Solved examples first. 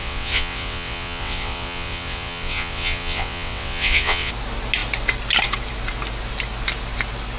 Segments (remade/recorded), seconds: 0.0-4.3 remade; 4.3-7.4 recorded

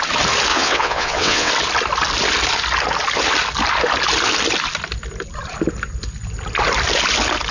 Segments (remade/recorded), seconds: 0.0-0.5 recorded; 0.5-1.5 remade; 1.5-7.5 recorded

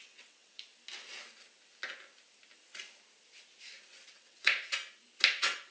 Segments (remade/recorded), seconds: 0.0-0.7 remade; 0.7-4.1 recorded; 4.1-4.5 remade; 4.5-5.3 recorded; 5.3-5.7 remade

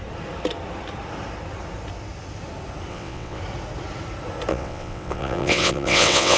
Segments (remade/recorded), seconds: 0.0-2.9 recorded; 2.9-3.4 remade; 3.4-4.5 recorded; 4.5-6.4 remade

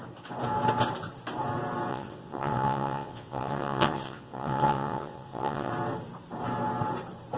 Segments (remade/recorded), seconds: 0.0-1.9 recorded; 1.9-5.7 remade; 5.7-7.4 recorded

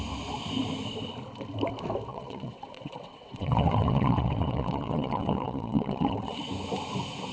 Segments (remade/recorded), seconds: 0.0-2.1 recorded; 2.1-6.5 remade; 6.5-7.3 recorded

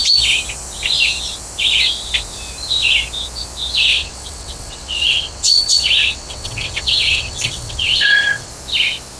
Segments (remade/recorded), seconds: 0.0-3.9 recorded; 3.9-8.5 remade; 8.5-9.2 recorded

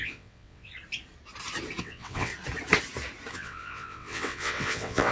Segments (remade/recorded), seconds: 0.0-0.7 remade; 0.7-1.8 recorded; 1.8-2.3 remade; 2.3-3.3 recorded; 3.3-5.1 remade